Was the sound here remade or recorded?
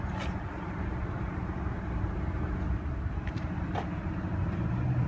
remade